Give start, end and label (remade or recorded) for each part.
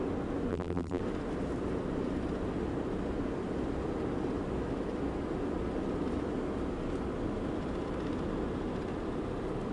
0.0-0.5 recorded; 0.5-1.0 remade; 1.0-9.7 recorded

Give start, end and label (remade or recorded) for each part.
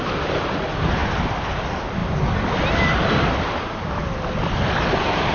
0.0-5.3 recorded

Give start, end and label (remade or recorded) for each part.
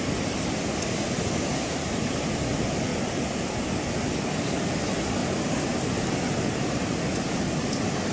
0.0-1.5 recorded; 1.5-2.3 remade; 2.3-5.2 recorded; 5.2-6.0 remade; 6.0-8.1 recorded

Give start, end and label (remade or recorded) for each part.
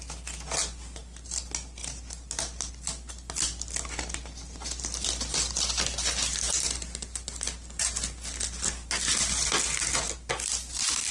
0.0-11.1 recorded